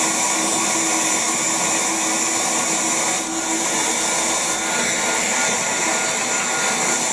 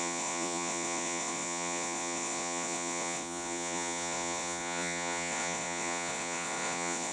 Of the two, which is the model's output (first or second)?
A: second